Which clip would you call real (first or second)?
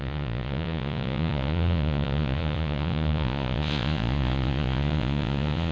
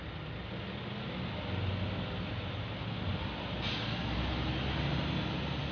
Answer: second